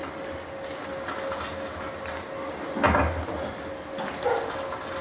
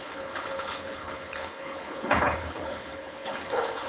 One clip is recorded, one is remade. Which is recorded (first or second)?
first